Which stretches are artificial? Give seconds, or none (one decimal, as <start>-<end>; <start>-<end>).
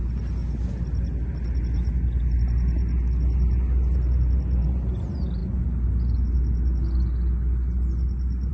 none